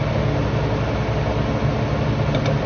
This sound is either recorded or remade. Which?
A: recorded